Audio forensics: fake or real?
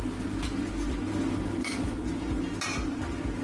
real